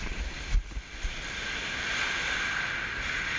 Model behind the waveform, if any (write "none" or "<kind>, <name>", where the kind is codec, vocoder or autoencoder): none